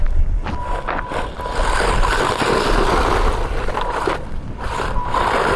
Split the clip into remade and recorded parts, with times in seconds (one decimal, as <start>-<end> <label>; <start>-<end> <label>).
0.0-5.6 recorded